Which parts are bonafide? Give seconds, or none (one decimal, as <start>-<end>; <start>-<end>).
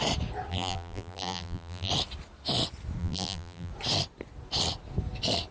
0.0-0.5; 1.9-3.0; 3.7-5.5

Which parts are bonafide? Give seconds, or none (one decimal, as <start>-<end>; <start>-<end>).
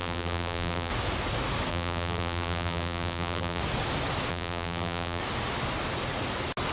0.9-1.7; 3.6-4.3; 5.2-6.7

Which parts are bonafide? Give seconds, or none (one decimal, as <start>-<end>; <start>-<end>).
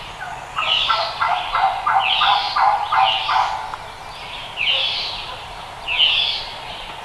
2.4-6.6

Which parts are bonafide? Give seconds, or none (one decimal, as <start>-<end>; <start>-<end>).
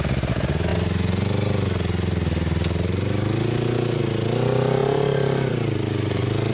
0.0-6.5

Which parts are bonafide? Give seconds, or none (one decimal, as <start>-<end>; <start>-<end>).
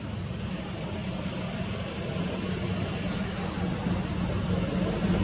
0.0-5.2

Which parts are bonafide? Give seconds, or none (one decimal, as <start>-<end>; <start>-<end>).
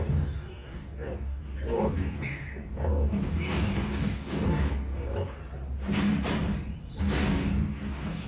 5.4-7.0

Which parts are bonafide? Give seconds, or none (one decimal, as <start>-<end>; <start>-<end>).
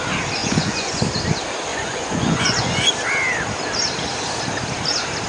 0.0-0.4; 1.0-1.7; 2.9-5.3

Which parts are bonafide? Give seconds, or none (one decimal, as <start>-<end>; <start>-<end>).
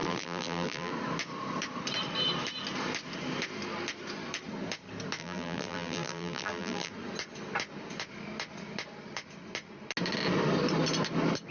0.9-5.2; 6.9-11.5